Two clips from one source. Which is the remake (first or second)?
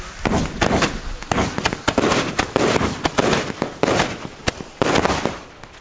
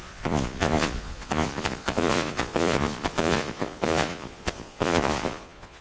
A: second